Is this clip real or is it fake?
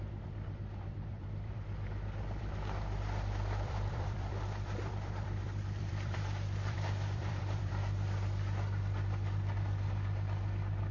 fake